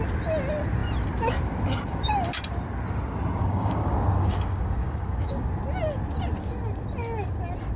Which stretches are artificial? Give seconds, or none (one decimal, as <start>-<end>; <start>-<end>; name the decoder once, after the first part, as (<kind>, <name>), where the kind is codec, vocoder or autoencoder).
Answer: 3.4-5.5 (codec, DAC)

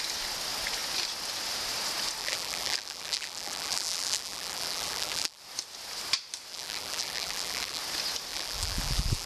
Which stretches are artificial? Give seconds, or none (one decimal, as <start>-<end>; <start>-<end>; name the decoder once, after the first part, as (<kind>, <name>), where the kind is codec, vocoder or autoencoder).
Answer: 2.2-5.4 (vocoder, BigVGAN v2); 6.5-7.8; 8.3-9.3

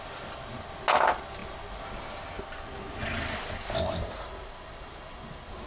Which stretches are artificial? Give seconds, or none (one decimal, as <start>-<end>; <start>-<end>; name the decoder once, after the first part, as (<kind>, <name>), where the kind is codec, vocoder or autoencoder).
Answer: none

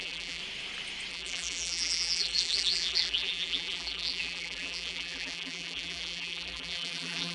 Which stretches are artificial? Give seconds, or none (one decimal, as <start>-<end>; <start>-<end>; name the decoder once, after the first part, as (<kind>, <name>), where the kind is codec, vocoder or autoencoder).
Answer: 0.0-0.4 (vocoder, BigVGAN v2); 1.1-7.3

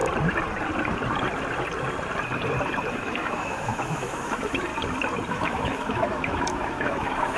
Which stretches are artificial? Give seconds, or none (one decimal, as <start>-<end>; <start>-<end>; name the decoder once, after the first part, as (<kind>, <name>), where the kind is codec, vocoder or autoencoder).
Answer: 2.9-4.7 (autoencoder, DAC-VAE); 5.3-7.4

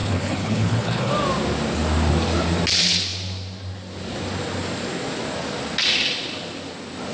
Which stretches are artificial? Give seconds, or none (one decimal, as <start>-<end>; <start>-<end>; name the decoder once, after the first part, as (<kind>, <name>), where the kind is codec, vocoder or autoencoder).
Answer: 0.0-1.1 (codec, HILCodec)

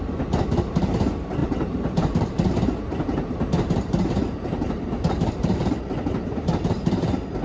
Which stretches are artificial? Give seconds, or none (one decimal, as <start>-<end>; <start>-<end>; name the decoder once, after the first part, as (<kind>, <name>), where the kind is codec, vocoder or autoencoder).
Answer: 1.4-5.8 (vocoder, BigVGAN v2)